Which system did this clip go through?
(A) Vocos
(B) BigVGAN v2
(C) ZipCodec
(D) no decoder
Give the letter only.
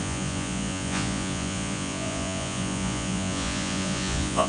A